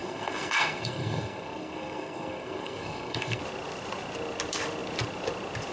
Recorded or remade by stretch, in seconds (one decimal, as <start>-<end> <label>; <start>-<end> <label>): 0.0-3.4 remade; 3.4-5.7 recorded